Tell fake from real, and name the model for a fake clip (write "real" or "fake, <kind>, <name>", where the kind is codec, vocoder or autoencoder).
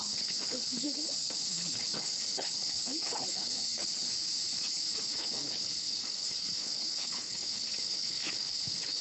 fake, codec, HILCodec